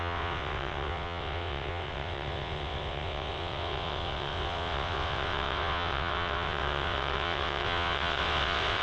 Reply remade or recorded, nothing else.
remade